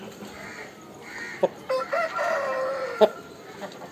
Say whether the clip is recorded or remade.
recorded